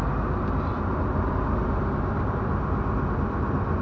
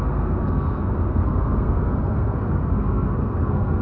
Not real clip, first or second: second